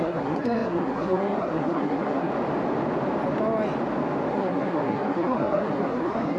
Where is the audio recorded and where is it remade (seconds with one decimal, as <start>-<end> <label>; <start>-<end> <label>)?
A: 0.0-2.3 remade; 2.3-4.3 recorded; 4.3-6.4 remade